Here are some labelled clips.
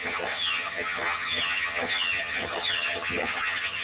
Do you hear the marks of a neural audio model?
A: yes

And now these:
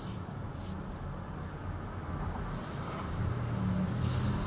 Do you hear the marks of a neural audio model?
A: no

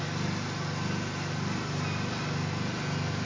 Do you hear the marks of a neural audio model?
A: no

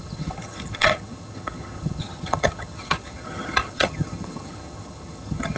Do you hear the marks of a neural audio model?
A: yes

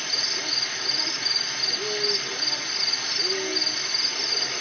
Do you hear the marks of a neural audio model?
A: no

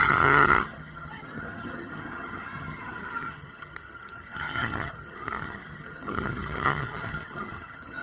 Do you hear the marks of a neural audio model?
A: yes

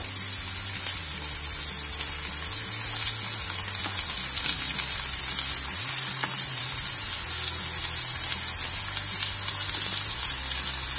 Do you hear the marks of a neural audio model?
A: no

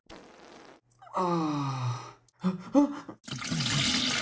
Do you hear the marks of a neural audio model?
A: no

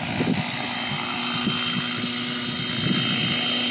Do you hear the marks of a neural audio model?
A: no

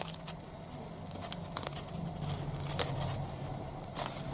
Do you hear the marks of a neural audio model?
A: no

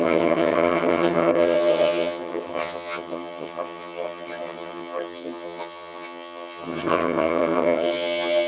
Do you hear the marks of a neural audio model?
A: yes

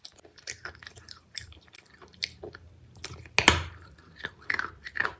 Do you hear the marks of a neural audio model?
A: no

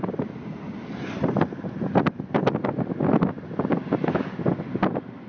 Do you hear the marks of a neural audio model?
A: no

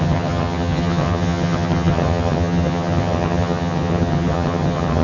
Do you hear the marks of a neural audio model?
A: yes